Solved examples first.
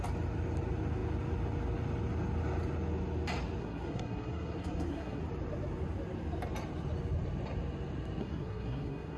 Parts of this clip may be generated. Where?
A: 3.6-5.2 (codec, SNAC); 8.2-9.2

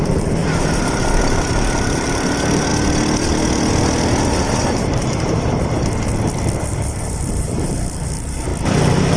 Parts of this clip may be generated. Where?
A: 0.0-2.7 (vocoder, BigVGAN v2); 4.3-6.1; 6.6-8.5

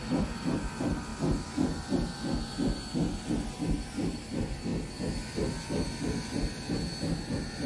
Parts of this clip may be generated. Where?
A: none

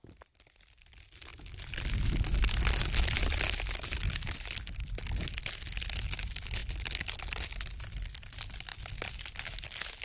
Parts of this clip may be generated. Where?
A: none

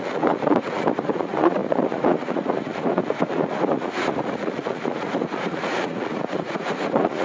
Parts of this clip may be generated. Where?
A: 0.0-7.2 (vocoder, Vocos)

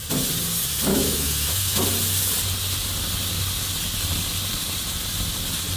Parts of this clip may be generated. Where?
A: 0.9-1.8 (autoencoder, DAC-VAE)

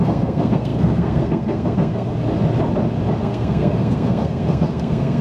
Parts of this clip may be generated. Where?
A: 0.0-2.1 (codec, SNAC); 3.2-5.2

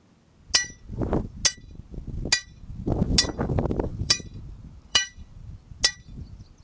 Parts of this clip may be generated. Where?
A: 3.9-5.4 (vocoder, BigVGAN v2)